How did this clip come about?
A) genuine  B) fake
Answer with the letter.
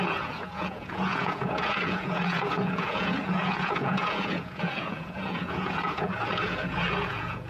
B